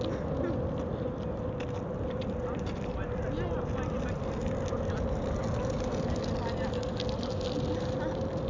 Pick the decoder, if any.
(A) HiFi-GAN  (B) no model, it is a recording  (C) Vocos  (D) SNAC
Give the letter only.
B